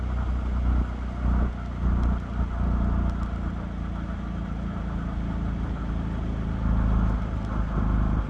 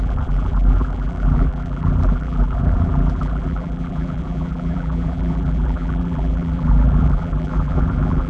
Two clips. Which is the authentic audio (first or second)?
first